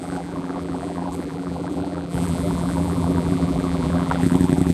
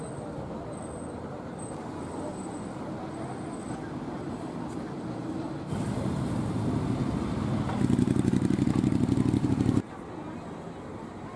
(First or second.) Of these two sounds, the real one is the second